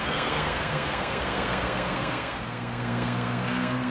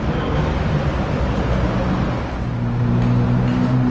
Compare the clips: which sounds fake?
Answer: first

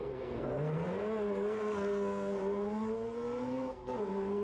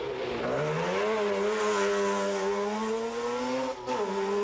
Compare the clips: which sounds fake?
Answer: first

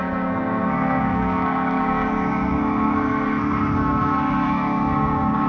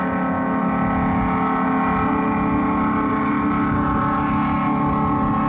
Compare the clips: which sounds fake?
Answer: first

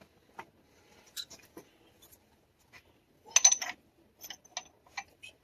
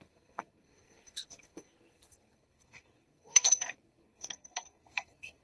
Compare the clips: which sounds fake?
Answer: second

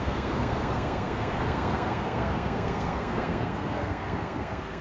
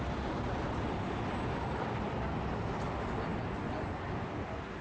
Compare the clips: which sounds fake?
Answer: first